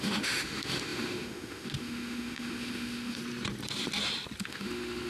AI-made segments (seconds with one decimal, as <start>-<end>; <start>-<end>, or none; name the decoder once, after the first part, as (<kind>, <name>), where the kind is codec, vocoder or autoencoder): 0.0-3.2 (autoencoder, DAC-VAE); 4.4-5.1